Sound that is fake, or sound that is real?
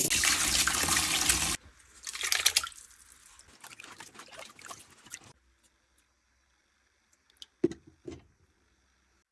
real